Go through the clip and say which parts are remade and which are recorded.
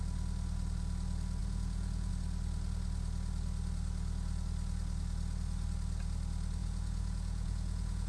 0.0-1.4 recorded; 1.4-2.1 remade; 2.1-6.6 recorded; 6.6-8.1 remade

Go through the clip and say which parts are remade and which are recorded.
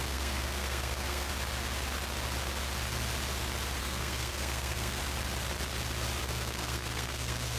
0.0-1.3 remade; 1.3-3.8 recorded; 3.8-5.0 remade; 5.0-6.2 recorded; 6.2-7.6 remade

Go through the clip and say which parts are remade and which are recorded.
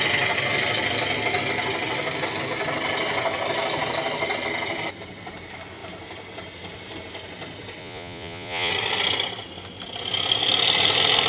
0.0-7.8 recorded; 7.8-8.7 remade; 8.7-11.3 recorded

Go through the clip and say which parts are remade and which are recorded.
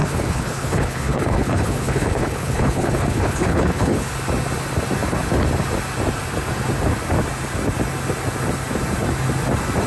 0.0-4.1 remade; 4.1-9.9 recorded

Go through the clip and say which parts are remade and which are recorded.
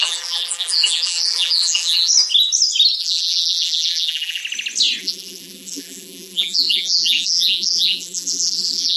0.0-2.1 remade; 2.1-3.0 recorded; 3.0-4.4 remade; 4.4-5.0 recorded; 5.0-9.0 remade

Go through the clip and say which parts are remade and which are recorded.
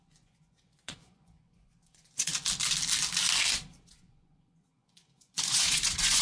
0.0-2.3 remade; 2.3-3.9 recorded; 3.9-6.2 remade